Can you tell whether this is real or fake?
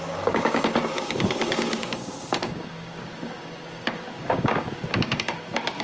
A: fake